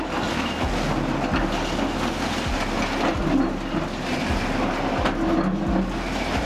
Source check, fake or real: real